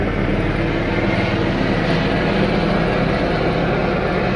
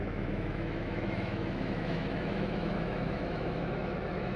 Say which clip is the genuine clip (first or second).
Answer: first